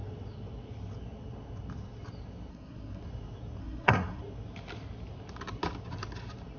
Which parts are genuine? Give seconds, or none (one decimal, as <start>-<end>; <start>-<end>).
0.0-2.5; 3.0-3.6; 4.2-6.6